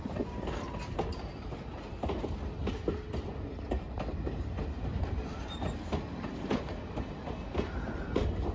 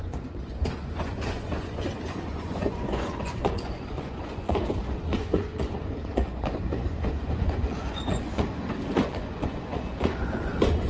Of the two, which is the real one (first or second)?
first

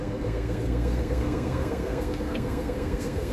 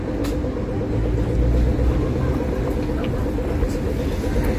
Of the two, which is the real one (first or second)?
second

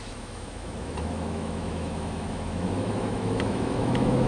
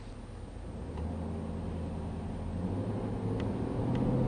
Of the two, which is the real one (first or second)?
second